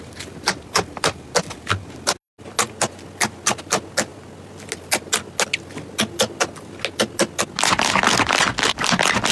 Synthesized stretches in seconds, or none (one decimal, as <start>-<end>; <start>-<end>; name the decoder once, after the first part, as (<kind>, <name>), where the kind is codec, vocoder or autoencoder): none